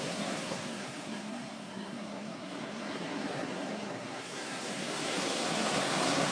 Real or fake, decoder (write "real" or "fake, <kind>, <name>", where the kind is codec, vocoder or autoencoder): fake, codec, SNAC